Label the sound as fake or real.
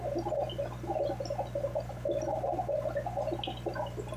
real